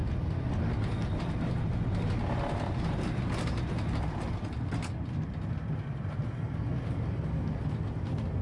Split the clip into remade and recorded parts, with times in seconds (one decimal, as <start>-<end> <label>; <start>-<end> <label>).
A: 0.0-8.4 recorded